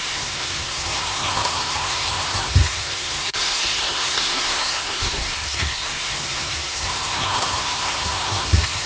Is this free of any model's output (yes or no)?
no